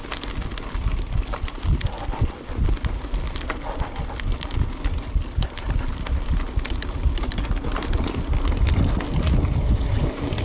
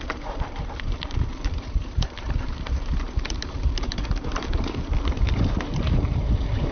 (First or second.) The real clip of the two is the first